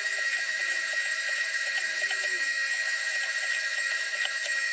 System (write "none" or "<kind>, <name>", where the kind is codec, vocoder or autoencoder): autoencoder, DAC-VAE